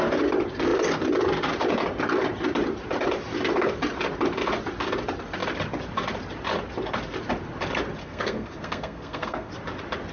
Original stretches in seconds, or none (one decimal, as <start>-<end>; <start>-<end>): 0.0-8.0; 9.5-10.1